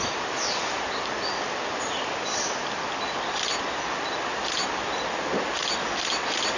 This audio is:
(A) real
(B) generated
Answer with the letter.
A